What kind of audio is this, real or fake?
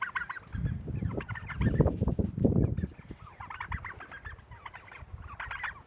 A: real